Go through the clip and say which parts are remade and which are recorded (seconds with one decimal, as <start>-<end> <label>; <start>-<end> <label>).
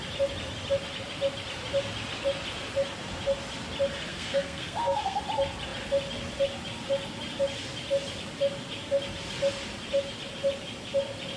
0.0-4.1 recorded; 4.1-5.2 remade; 5.2-11.4 recorded